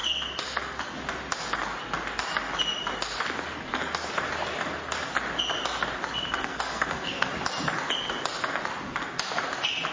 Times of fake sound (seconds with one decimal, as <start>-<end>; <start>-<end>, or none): 6.4-7.3